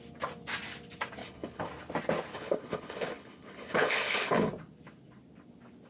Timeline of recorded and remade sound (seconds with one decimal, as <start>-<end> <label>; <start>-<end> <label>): 0.0-1.2 recorded; 1.2-1.7 remade; 1.7-2.3 recorded; 2.3-4.5 remade; 4.5-5.9 recorded